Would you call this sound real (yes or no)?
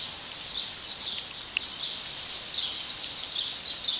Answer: yes